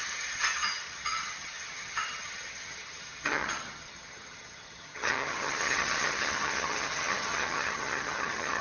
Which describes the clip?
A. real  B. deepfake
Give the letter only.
B